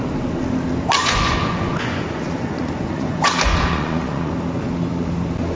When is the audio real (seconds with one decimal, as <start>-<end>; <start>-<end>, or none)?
0.0-1.0; 4.3-5.5